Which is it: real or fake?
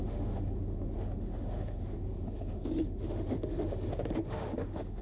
fake